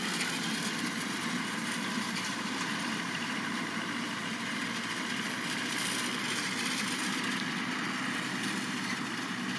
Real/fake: fake